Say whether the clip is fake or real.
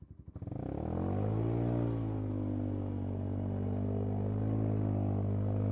real